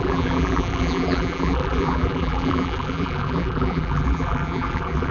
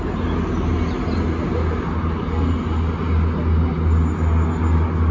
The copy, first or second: first